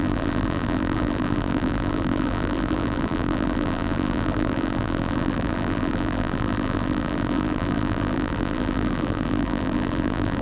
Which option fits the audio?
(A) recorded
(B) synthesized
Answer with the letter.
B